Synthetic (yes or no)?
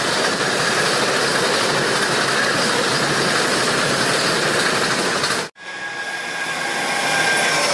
no